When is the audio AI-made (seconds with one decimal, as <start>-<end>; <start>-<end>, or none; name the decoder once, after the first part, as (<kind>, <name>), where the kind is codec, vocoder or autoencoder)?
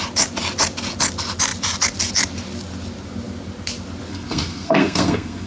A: 4.1-5.5 (codec, SNAC)